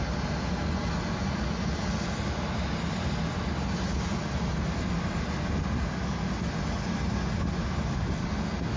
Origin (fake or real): real